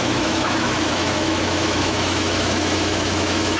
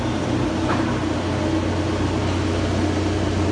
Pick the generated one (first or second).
first